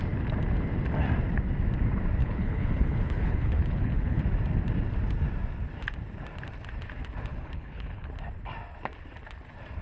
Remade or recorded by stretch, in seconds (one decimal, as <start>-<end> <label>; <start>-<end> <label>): 0.0-2.2 recorded; 2.2-4.2 remade; 4.2-7.3 recorded; 7.3-8.1 remade; 8.1-9.8 recorded